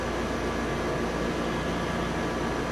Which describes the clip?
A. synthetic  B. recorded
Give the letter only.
B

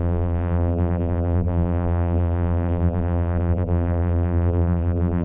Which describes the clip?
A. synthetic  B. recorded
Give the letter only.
A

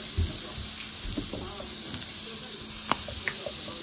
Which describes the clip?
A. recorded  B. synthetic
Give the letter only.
A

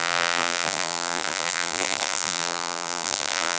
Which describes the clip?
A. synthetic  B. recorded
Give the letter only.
A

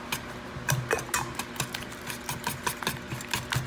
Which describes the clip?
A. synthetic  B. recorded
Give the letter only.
B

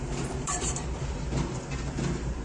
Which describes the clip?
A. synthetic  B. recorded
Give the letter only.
A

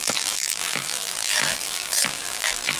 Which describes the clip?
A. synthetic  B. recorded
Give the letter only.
A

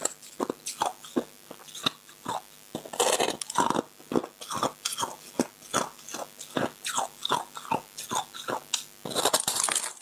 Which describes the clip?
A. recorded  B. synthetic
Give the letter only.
A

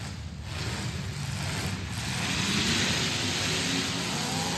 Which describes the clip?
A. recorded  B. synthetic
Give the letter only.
A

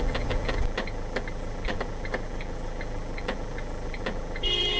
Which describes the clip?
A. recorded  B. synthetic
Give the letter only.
B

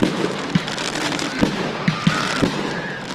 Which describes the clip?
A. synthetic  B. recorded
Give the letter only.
B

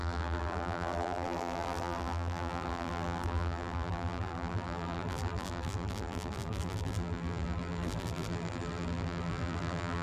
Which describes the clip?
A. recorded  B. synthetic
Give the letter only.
B